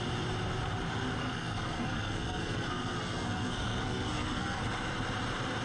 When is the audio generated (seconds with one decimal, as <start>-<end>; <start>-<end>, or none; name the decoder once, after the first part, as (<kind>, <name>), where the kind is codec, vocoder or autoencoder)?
1.2-4.6 (codec, SNAC)